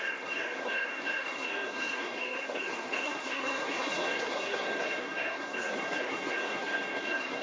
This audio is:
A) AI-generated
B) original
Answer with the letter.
A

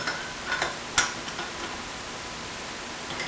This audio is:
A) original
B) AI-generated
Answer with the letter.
A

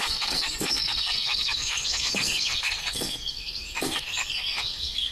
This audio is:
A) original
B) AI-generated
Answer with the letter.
B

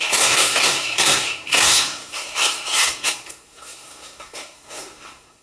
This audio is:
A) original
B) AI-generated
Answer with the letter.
B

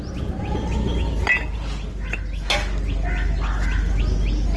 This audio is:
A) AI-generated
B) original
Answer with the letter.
B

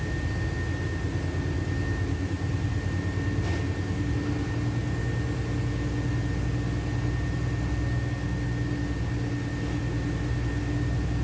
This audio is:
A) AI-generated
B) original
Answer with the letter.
B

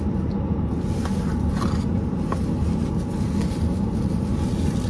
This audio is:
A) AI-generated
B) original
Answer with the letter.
B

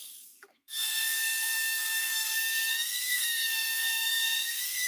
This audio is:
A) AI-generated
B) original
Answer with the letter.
A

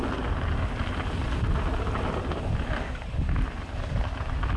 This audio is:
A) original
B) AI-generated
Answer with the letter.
A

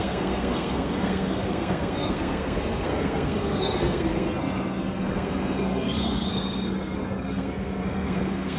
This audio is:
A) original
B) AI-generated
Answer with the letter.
B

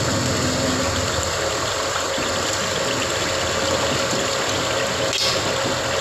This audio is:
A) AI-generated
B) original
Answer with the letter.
B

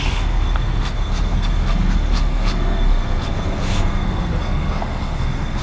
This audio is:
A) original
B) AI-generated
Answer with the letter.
B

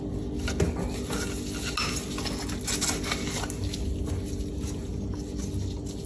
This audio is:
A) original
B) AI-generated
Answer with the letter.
A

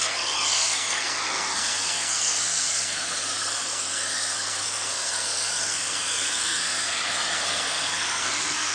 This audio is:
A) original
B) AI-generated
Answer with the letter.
B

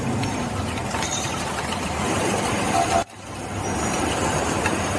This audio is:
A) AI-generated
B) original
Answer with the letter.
B